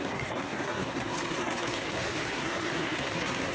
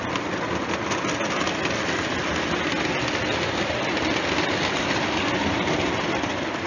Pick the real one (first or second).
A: second